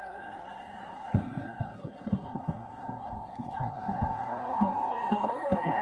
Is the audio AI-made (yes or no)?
yes